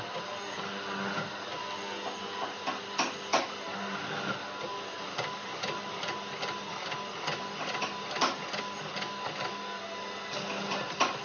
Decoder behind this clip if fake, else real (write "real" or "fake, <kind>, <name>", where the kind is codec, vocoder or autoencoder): real